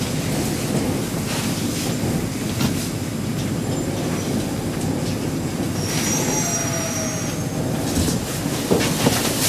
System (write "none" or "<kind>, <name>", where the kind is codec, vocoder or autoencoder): none